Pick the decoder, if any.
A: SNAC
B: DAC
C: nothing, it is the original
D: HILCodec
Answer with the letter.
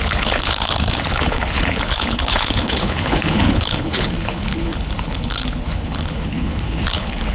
D